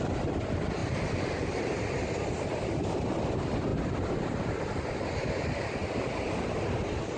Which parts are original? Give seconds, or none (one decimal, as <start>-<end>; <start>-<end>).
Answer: 0.0-7.2